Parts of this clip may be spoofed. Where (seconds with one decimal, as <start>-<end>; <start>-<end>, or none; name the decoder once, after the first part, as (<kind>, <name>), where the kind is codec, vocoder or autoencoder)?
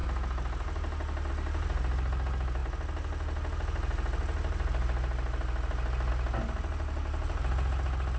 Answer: none